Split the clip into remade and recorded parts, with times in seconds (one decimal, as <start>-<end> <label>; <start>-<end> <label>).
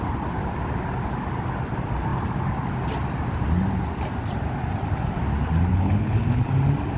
0.0-5.7 recorded; 5.7-6.4 remade; 6.4-7.0 recorded